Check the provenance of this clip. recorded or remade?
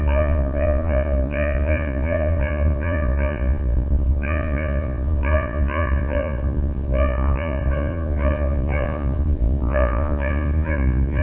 remade